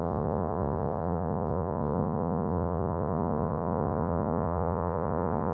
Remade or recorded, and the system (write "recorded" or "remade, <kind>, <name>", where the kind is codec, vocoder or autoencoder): remade, vocoder, Vocos